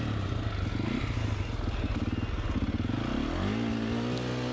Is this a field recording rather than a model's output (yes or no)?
yes